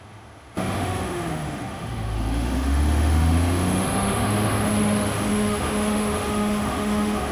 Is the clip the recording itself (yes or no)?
no